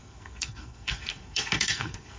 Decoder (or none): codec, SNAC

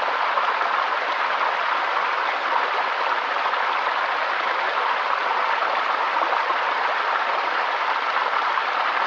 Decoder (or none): none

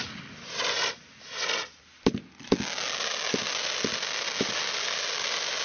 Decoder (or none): none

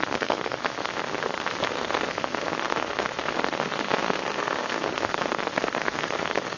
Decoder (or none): codec, SNAC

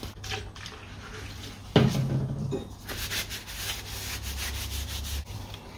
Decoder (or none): none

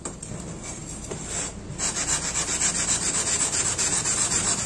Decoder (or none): none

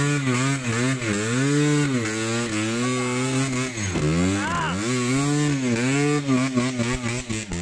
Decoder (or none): none